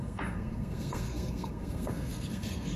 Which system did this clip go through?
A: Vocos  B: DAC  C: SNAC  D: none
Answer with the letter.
C